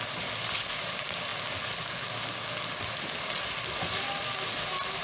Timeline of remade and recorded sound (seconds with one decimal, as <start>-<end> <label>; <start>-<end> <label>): 0.0-5.0 recorded